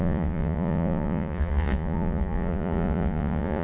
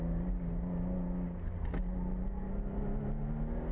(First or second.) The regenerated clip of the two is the first